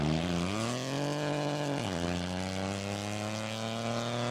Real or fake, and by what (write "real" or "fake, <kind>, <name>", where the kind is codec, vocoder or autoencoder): real